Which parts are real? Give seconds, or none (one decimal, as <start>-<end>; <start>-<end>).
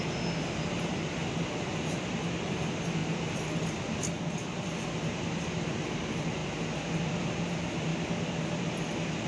0.0-1.2; 2.2-9.3